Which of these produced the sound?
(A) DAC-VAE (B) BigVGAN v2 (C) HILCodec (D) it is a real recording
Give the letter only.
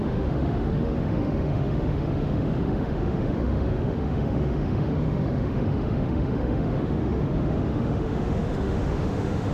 A